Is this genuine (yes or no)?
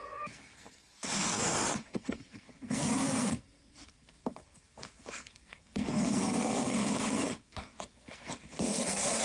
no